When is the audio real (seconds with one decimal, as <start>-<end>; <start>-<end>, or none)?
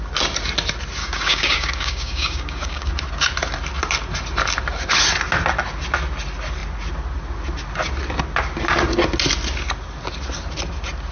0.0-1.0; 2.9-11.1